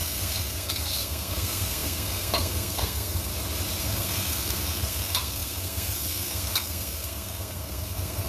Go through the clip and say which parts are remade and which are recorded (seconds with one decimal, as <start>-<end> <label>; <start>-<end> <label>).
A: 0.0-3.3 remade; 3.3-3.8 recorded; 3.8-8.3 remade

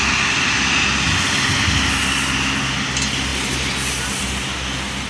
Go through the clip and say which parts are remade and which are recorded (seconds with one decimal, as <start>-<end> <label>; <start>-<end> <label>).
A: 0.0-5.1 recorded

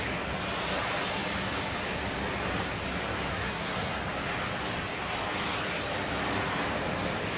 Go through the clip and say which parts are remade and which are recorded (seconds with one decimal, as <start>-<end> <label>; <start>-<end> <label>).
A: 0.0-3.3 recorded; 3.3-4.0 remade; 4.0-7.4 recorded

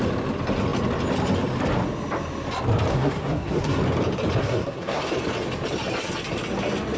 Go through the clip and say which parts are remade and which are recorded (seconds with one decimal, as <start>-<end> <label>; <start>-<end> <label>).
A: 0.0-2.9 recorded; 2.9-3.8 remade; 3.8-4.4 recorded; 4.4-5.0 remade; 5.0-7.0 recorded

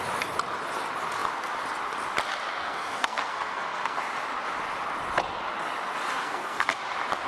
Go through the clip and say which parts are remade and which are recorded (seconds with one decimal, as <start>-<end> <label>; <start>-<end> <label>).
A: 0.0-2.6 recorded; 2.6-4.0 remade; 4.0-6.2 recorded; 6.2-6.8 remade; 6.8-7.3 recorded

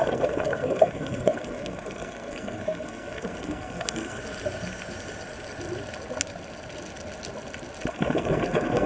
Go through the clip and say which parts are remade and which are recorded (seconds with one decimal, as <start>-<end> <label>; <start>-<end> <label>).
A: 0.0-4.2 remade; 4.2-7.9 recorded; 7.9-8.9 remade

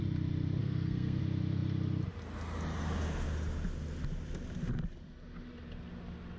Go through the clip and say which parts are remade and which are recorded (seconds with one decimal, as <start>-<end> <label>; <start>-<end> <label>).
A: 0.0-0.6 recorded; 0.6-1.2 remade; 1.2-6.4 recorded